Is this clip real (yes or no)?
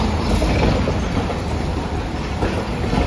yes